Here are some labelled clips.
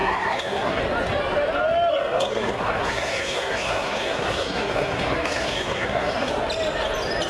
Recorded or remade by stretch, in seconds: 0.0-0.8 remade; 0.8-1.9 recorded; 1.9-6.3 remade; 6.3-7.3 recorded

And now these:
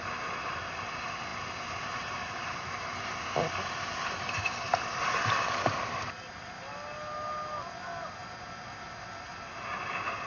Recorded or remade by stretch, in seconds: 0.0-10.3 recorded